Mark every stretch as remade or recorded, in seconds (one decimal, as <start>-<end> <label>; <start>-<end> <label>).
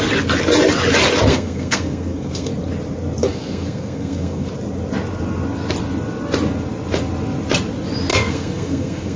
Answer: 0.0-1.3 recorded; 1.3-2.5 remade; 2.5-3.2 recorded; 3.2-4.5 remade; 4.5-8.1 recorded; 8.1-9.2 remade